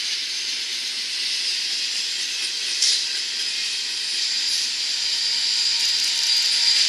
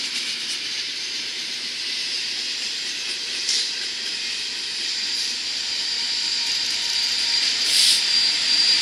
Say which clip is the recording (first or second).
first